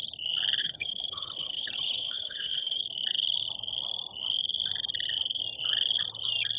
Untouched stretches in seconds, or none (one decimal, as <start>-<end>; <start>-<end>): 0.0-0.6; 2.8-6.6